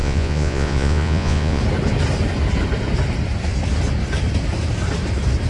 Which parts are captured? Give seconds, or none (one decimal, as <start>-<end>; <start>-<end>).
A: 1.6-5.5

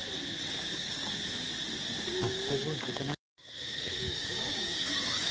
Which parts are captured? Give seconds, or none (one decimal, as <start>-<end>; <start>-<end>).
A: 0.0-0.5; 1.1-2.2

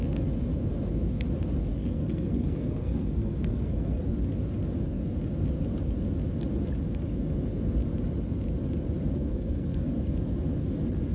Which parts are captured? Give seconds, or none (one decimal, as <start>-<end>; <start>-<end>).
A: 0.0-1.8; 4.0-9.3; 9.9-11.1

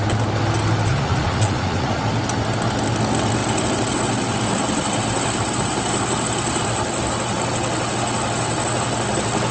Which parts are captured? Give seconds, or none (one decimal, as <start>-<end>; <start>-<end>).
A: 0.0-0.9; 2.0-9.5

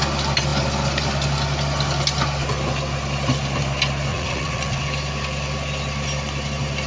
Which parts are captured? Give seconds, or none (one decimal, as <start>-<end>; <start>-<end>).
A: 0.0-4.1; 4.8-6.9

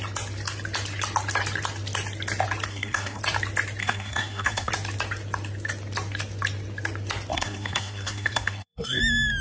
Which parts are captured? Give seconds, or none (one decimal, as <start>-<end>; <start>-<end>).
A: 0.0-2.7; 3.2-3.8; 4.7-7.3; 9.0-9.4

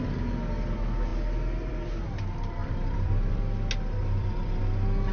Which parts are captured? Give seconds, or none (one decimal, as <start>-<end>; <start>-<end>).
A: 0.0-2.6; 3.4-4.0; 4.6-5.1

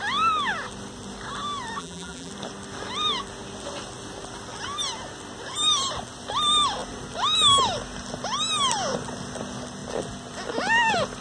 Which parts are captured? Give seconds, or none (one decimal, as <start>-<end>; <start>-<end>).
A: 0.0-1.8; 2.3-11.2